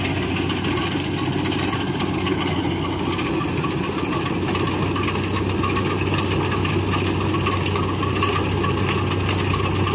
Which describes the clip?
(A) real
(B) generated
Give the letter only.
A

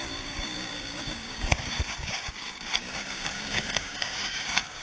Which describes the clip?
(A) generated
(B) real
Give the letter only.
A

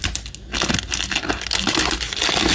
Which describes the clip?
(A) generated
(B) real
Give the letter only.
B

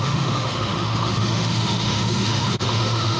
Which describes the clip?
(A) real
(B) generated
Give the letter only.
B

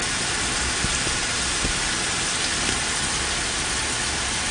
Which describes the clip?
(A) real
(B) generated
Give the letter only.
A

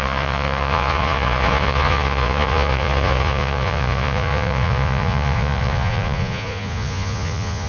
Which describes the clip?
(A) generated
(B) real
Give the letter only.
A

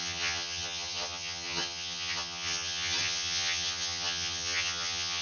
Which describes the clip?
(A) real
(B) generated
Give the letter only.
B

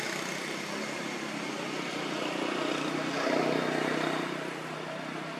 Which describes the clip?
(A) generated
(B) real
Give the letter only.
B